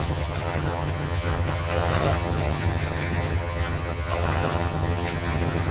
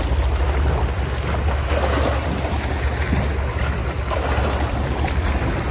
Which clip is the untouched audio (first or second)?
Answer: second